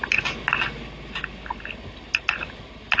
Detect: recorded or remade recorded